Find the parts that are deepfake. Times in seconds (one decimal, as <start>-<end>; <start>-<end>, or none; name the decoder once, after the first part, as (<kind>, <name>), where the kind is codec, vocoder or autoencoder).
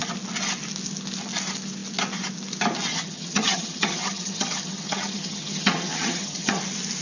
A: 2.9-6.6 (vocoder, HiFi-GAN)